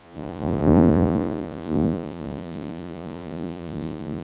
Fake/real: fake